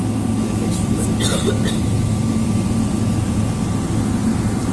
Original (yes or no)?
yes